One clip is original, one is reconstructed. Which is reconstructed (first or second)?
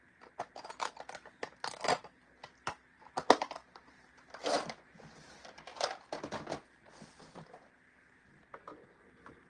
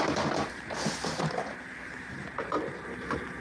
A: second